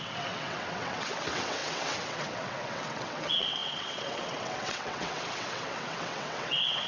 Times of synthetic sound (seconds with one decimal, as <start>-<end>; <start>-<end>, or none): 0.0-6.9